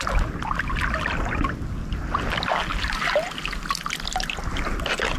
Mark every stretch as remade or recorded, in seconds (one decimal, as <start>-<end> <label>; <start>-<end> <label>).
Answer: 0.0-5.2 recorded